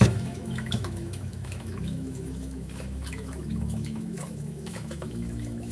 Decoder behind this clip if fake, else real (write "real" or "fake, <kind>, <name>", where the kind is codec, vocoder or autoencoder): fake, autoencoder, DAC-VAE